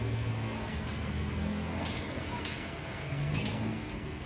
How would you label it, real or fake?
fake